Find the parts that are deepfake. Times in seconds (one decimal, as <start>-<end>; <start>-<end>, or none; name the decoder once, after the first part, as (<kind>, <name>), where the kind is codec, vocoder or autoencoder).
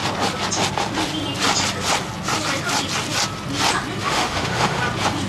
4.0-4.8 (autoencoder, DAC-VAE)